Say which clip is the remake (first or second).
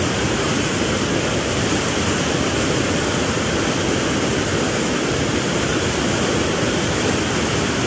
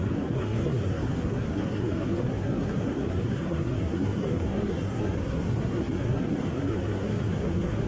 second